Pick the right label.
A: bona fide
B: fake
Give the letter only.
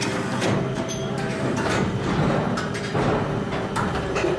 B